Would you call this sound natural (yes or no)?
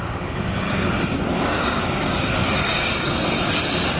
no